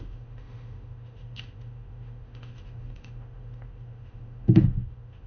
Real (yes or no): no